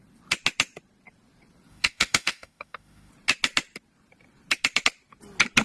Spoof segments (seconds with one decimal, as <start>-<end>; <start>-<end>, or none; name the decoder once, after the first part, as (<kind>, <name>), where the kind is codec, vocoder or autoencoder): 1.7-3.1 (autoencoder, DAC-VAE)